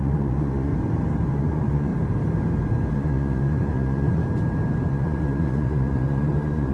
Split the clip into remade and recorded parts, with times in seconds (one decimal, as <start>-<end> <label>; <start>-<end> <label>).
0.0-0.7 remade; 0.7-1.3 recorded; 1.3-1.9 remade; 1.9-2.9 recorded; 2.9-4.2 remade; 4.2-4.9 recorded; 4.9-6.7 remade